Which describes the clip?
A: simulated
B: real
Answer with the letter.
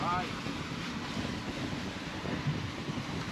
B